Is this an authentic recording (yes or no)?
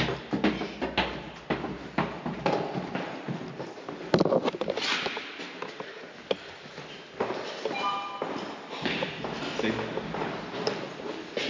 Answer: yes